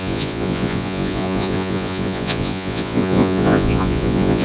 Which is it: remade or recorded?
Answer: remade